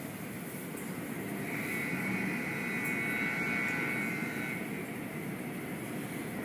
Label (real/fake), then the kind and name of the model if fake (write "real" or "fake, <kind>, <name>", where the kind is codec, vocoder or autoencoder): real